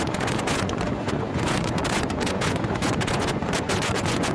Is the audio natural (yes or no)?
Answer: no